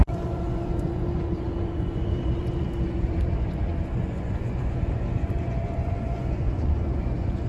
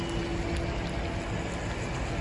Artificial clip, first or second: first